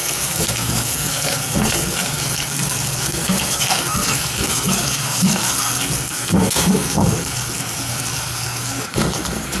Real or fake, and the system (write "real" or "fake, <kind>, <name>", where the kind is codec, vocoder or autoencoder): fake, codec, SNAC